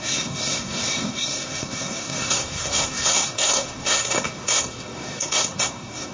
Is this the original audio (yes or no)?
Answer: no